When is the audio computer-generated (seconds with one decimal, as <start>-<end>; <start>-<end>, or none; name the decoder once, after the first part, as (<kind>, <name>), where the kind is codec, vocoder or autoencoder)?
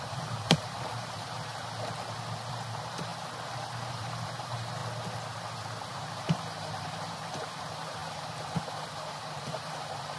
0.0-1.5 (vocoder, BigVGAN v2); 2.5-3.1; 3.9-4.8; 5.9-10.2